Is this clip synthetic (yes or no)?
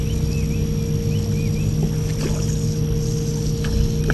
no